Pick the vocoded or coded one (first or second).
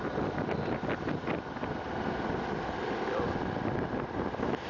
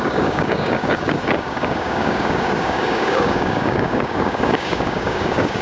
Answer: second